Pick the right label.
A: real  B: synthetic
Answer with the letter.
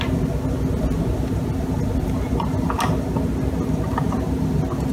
A